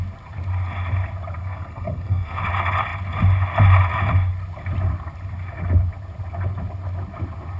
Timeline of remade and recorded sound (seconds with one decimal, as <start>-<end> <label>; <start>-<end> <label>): 0.0-1.4 recorded; 1.4-2.4 remade; 2.4-7.6 recorded